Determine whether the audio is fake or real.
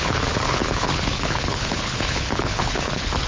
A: fake